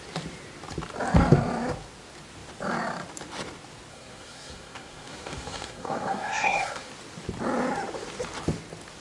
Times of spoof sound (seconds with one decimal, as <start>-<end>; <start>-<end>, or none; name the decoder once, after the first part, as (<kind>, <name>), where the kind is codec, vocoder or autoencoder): 3.9-6.9 (codec, SNAC)